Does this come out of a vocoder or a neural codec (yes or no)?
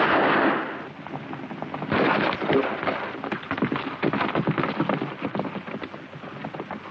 no